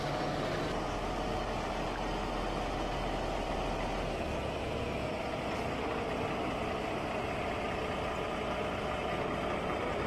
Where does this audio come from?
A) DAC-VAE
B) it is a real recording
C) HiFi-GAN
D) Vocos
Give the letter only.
B